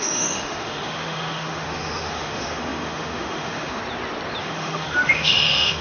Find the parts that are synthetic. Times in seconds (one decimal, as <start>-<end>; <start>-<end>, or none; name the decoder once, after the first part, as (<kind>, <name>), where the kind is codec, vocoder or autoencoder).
0.0-3.8 (autoencoder, DAC-VAE); 4.4-5.8